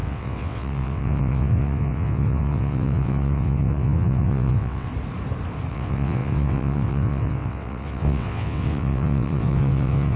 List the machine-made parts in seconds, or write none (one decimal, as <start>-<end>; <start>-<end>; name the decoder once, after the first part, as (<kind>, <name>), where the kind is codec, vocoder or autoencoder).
0.0-4.9 (vocoder, WaveNeXt); 5.7-10.2